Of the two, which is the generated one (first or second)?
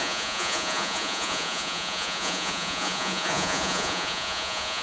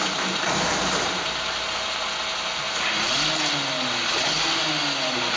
first